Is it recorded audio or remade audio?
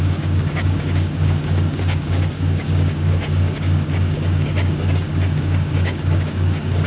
remade